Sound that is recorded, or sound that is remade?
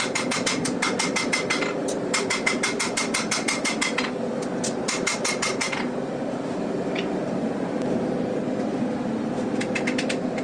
recorded